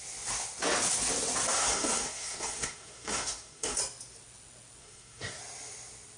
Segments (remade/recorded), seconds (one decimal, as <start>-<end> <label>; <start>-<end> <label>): 0.0-1.5 recorded; 1.5-3.8 remade; 3.8-4.8 recorded; 4.8-5.4 remade; 5.4-6.2 recorded